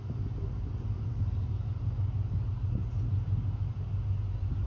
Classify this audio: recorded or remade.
recorded